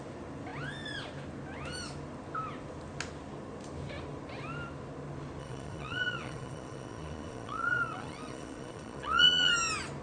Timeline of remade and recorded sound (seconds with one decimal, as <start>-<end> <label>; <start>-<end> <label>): 0.0-5.4 recorded; 5.4-9.5 remade; 9.5-10.0 recorded